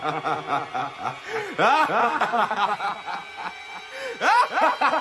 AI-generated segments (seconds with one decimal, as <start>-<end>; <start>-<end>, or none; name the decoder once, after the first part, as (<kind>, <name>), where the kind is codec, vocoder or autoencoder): 2.0-2.8 (codec, SNAC)